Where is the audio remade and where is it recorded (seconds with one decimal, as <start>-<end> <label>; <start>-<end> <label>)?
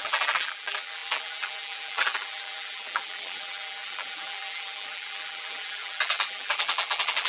0.0-7.3 remade